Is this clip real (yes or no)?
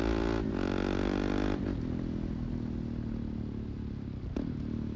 yes